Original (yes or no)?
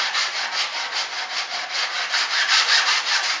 yes